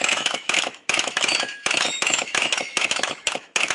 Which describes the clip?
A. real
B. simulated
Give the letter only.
B